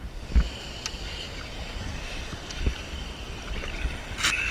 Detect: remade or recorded recorded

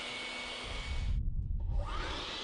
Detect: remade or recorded recorded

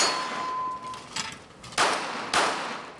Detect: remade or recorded recorded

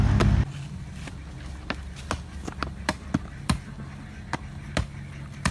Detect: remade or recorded recorded